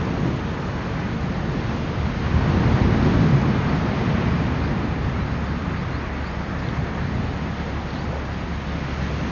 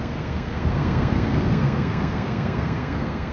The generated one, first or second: second